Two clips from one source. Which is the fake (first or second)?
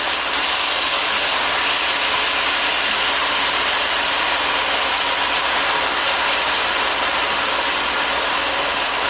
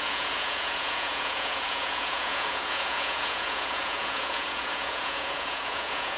second